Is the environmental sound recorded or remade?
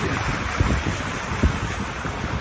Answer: recorded